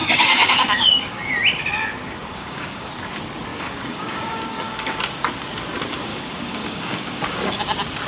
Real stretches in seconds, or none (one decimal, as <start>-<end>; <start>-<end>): 1.3-2.3; 2.9-3.5; 5.0-6.1; 7.6-8.1

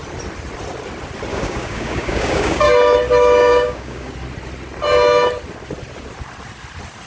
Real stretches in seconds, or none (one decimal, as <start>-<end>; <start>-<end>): 0.0-1.3; 2.7-3.5; 4.1-7.1

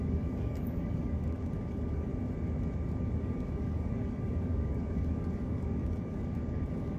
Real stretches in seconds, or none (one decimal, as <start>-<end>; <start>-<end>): 2.1-3.0

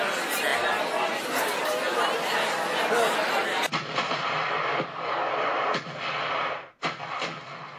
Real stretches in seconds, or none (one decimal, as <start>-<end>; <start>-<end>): 0.0-4.7; 5.3-7.8

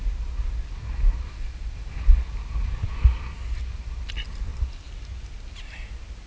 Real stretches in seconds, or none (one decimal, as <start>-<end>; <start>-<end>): 0.0-6.3

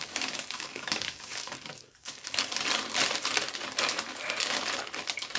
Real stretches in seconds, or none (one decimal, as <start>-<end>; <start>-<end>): 2.4-5.4

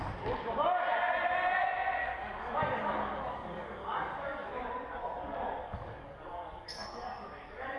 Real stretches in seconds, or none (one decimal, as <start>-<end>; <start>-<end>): 0.0-2.0; 4.5-5.6

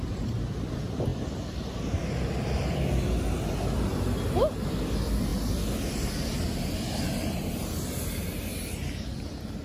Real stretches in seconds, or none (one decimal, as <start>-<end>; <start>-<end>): 0.0-9.6